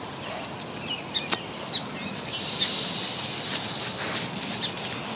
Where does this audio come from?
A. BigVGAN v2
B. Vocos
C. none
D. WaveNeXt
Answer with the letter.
C